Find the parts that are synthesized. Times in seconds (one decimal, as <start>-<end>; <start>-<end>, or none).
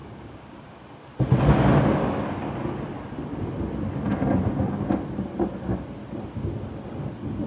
0.0-0.7